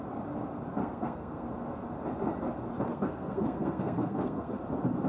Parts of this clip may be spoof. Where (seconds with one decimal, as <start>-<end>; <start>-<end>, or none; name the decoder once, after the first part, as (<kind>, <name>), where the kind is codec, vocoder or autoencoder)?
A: 0.8-1.5 (codec, SNAC); 2.9-4.6